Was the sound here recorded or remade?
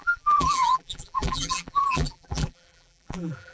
remade